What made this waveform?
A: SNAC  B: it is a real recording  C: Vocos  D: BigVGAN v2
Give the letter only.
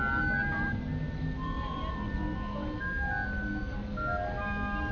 B